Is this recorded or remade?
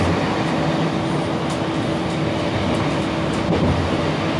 recorded